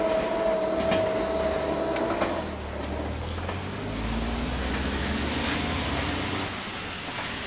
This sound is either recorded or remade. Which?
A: recorded